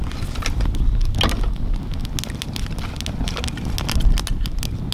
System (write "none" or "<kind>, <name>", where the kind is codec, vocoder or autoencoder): none